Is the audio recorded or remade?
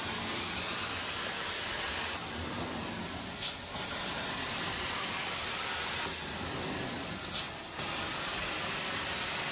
recorded